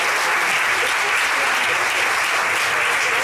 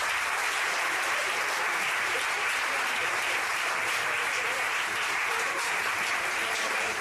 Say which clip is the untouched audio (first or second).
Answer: first